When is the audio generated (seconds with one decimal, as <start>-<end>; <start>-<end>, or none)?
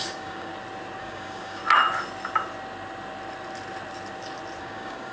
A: 0.0-0.5; 1.0-1.6; 4.6-5.1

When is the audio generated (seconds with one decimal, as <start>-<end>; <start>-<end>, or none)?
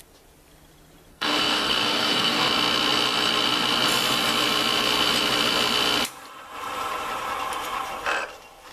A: 1.1-2.5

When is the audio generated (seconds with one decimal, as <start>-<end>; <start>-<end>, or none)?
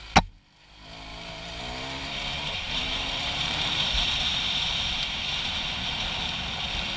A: 1.1-1.6; 2.0-6.2